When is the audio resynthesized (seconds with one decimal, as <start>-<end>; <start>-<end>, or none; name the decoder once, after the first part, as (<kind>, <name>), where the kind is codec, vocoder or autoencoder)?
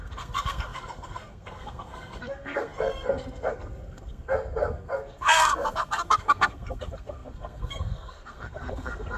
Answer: 0.0-9.2 (codec, SNAC)